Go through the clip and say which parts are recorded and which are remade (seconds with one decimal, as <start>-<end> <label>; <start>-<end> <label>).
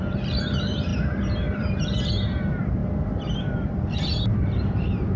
0.0-2.8 remade; 2.8-3.3 recorded; 3.3-5.2 remade